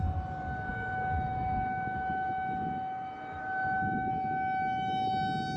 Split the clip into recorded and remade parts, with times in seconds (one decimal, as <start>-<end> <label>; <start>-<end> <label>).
0.0-0.7 recorded; 0.7-4.1 remade; 4.1-5.6 recorded